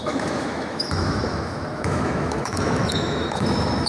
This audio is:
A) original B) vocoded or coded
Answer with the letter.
B